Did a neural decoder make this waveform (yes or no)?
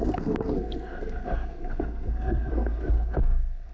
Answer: yes